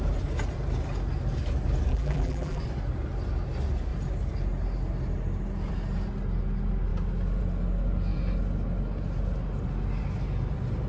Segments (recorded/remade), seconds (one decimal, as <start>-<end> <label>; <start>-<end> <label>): 0.0-1.9 recorded; 1.9-2.6 remade; 2.6-10.9 recorded